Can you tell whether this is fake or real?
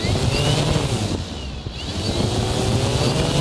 real